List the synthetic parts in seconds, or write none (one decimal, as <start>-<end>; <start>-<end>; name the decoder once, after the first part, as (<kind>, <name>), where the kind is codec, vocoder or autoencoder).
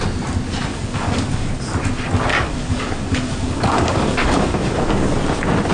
0.7-1.5 (codec, DAC); 2.3-5.1